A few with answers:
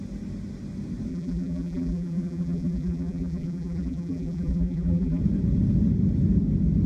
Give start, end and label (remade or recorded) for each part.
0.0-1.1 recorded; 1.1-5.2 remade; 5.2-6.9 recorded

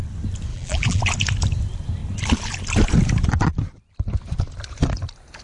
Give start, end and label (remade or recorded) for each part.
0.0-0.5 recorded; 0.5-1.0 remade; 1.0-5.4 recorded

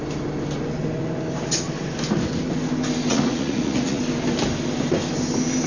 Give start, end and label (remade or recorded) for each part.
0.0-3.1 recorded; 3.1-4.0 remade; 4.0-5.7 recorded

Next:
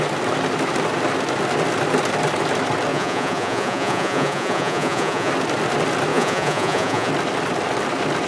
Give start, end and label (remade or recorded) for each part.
0.0-2.9 recorded; 2.9-5.3 remade; 5.3-6.1 recorded; 6.1-7.1 remade; 7.1-8.3 recorded

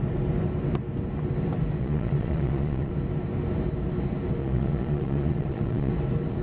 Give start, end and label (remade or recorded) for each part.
0.0-1.8 recorded; 1.8-2.9 remade; 2.9-4.4 recorded; 4.4-5.9 remade; 5.9-6.4 recorded

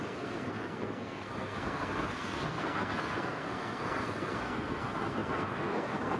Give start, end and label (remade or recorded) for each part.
0.0-6.2 remade

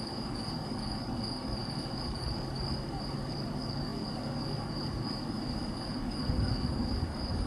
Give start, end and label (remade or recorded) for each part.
0.0-7.5 remade

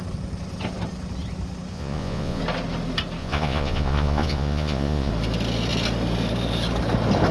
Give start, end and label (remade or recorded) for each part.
0.0-1.7 recorded; 1.7-2.4 remade; 2.4-3.2 recorded; 3.2-5.1 remade; 5.1-7.3 recorded